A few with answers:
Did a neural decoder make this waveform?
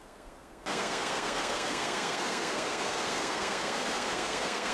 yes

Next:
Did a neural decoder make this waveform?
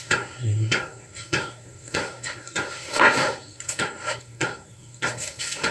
yes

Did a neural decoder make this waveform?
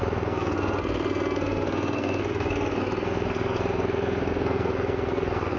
yes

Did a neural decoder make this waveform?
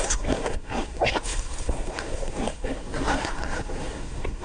yes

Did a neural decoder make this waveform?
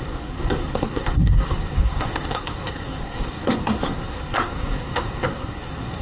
yes